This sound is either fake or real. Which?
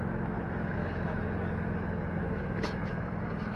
fake